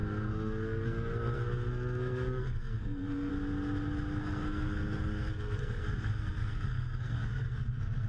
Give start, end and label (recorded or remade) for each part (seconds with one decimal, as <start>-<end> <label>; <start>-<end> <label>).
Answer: 0.0-3.3 remade; 3.3-4.2 recorded; 4.2-8.1 remade

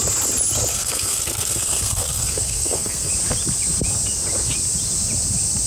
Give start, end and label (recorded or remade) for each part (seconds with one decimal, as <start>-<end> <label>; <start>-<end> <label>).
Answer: 0.0-0.7 recorded; 0.7-3.1 remade; 3.1-5.7 recorded

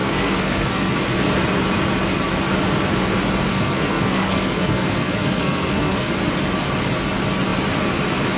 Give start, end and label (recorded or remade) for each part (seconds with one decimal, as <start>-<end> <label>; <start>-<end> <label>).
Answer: 0.0-0.9 remade; 0.9-3.5 recorded; 3.5-6.1 remade; 6.1-8.4 recorded

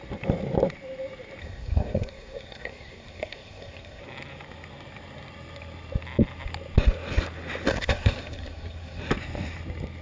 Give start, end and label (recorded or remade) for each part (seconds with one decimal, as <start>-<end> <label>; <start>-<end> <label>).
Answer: 0.0-1.4 recorded; 1.4-4.0 remade; 4.0-7.7 recorded; 7.7-9.0 remade; 9.0-10.0 recorded

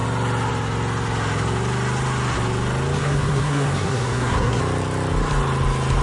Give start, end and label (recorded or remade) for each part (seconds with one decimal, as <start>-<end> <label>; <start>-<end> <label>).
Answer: 0.0-3.0 recorded; 3.0-4.6 remade; 4.6-6.0 recorded

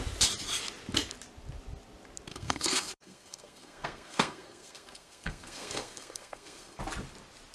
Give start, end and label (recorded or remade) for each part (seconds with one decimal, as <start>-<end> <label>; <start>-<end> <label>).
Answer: 0.0-2.3 recorded; 2.3-6.8 remade; 6.8-7.5 recorded

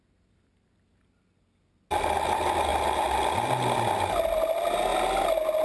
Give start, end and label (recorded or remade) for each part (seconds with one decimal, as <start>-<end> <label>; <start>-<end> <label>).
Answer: 0.0-5.6 recorded

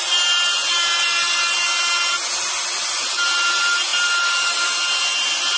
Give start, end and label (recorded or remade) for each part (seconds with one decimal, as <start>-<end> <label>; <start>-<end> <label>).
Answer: 0.0-5.6 recorded